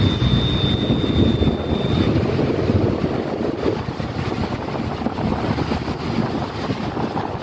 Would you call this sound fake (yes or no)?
no